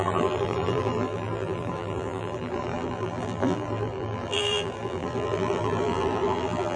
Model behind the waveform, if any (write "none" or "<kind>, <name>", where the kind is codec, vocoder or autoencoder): vocoder, BigVGAN v2